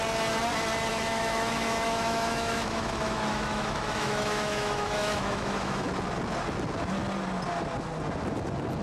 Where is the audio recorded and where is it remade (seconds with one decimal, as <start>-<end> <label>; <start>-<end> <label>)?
0.0-0.9 recorded; 0.9-5.9 remade; 5.9-8.8 recorded